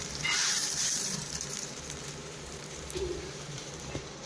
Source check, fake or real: fake